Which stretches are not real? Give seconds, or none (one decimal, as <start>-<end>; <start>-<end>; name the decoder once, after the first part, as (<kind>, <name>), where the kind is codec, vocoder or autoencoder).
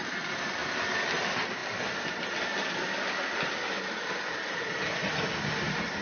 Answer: 0.0-0.6 (vocoder, BigVGAN v2); 1.2-6.0